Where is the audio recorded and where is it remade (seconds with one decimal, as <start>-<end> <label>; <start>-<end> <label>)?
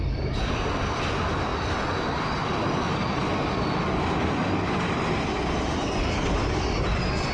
0.0-7.3 recorded